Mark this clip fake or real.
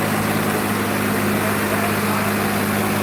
real